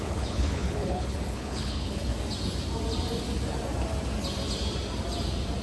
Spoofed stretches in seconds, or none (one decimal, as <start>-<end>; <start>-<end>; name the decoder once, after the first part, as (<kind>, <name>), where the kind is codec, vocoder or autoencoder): 0.0-2.1 (codec, HILCodec)